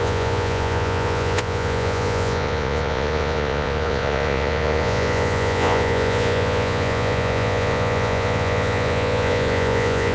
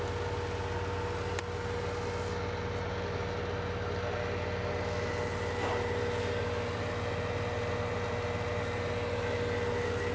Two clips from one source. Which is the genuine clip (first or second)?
second